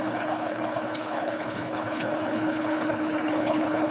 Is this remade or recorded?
remade